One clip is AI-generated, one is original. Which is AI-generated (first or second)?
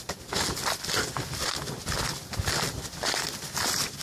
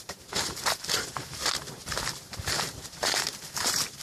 second